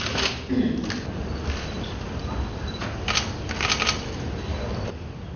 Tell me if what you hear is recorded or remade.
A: recorded